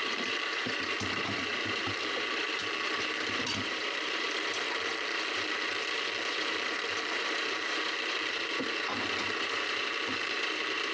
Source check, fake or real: fake